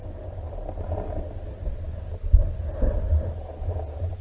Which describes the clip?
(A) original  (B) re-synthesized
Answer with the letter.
A